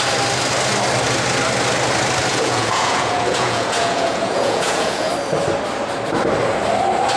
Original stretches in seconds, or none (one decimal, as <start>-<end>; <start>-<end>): 0.0-2.3; 5.1-7.2